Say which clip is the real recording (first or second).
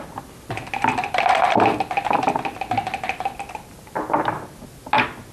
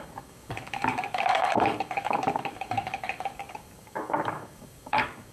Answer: first